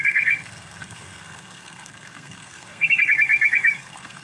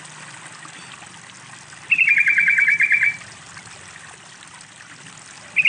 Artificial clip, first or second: first